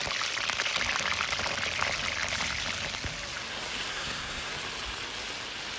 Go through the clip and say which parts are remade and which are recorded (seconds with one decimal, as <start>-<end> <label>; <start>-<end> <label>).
0.0-3.9 recorded; 3.9-4.5 remade; 4.5-5.8 recorded